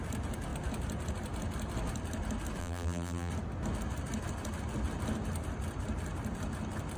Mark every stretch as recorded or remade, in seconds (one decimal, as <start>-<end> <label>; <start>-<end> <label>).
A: 0.0-2.6 recorded; 2.6-3.3 remade; 3.3-7.0 recorded